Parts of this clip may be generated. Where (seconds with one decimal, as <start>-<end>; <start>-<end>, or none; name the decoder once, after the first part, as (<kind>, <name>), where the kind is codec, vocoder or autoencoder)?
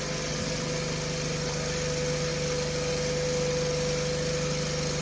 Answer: none